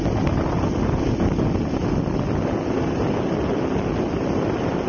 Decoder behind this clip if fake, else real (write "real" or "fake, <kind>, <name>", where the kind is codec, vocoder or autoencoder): real